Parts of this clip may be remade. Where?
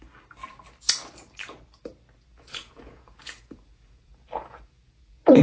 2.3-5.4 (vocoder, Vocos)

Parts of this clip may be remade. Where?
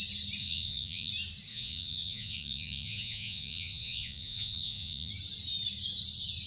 0.4-1.1 (vocoder, Vocos); 1.5-5.1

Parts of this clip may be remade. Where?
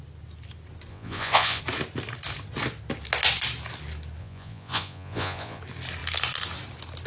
0.9-1.6 (vocoder, Vocos); 4.2-5.6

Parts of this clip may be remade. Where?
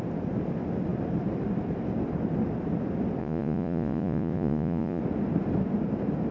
3.2-5.0 (vocoder, Vocos)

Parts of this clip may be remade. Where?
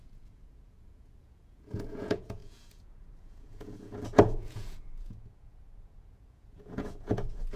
0.0-7.6 (vocoder, Vocos)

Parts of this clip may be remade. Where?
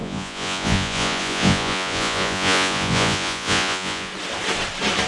0.0-4.1 (vocoder, Vocos)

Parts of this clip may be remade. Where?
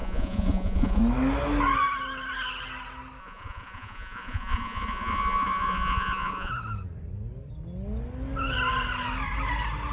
0.0-1.0 (vocoder, Vocos); 3.2-6.5